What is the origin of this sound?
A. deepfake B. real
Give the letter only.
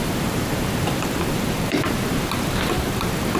A